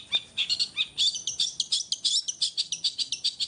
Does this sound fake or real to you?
real